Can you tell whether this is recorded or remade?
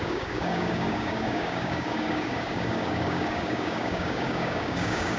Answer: remade